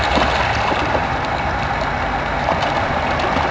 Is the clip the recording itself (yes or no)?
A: yes